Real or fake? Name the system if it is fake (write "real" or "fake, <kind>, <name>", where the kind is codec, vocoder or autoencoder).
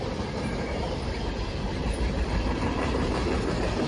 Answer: fake, vocoder, BigVGAN v2